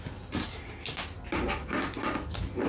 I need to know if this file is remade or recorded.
recorded